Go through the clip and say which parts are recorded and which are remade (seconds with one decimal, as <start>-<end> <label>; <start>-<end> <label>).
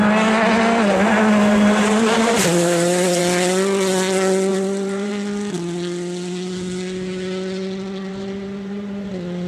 0.0-1.5 recorded; 1.5-3.2 remade; 3.2-4.5 recorded; 4.5-5.1 remade; 5.1-8.1 recorded; 8.1-9.1 remade; 9.1-9.5 recorded